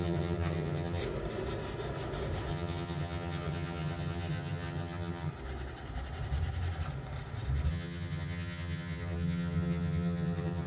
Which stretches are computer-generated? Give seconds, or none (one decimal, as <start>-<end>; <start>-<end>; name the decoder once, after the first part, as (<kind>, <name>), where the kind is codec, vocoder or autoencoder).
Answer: 0.0-1.0 (vocoder, HiFi-GAN); 2.5-5.3; 7.7-10.7

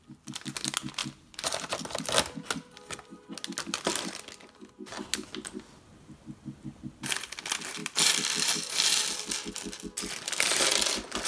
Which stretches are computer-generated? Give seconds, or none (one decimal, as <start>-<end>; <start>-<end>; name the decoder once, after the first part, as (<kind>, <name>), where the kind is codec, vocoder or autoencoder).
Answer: 7.8-8.7 (vocoder, BigVGAN v2)

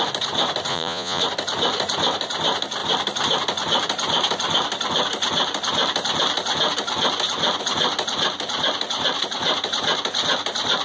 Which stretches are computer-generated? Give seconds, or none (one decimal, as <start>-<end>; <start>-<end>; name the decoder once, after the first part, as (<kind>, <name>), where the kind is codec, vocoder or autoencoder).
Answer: 0.7-1.2 (vocoder, Vocos)

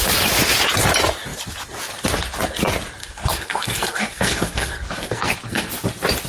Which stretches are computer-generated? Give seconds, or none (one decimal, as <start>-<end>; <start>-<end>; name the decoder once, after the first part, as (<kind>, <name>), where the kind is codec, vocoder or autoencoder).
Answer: 3.0-5.7 (codec, SNAC)